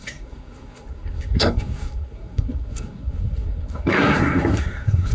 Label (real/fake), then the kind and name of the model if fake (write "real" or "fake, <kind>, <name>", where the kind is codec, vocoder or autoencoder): fake, codec, SNAC